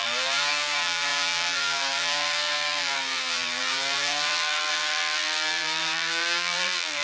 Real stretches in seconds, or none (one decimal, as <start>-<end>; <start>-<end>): none